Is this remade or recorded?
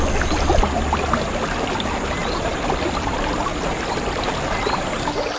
recorded